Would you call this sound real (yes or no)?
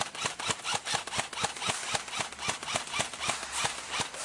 yes